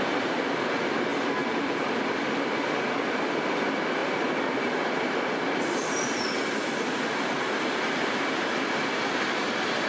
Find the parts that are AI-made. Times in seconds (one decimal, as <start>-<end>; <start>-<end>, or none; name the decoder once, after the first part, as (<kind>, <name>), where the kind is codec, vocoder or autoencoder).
4.0-7.1 (vocoder, BigVGAN v2)